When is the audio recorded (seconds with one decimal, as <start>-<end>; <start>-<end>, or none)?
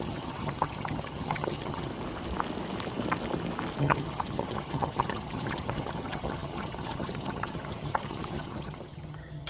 1.9-3.8